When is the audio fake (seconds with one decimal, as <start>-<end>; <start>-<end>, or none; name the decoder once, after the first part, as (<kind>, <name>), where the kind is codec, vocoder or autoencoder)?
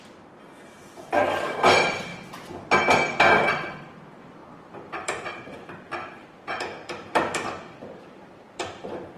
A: 0.0-2.1 (vocoder, BigVGAN v2); 3.3-9.2